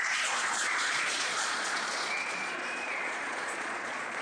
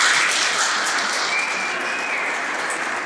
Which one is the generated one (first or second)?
first